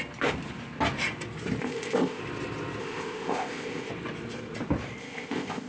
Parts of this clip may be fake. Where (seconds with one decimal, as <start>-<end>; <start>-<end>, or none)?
1.6-2.2; 2.8-3.9; 5.0-5.7